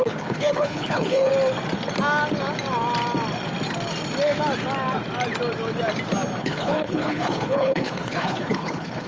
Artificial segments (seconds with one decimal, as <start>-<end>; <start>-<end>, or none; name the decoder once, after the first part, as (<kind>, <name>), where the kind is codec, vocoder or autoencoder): 0.0-1.3 (codec, HILCodec); 6.4-9.1